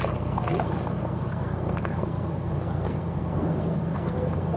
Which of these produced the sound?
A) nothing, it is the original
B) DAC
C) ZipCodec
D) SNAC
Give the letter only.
D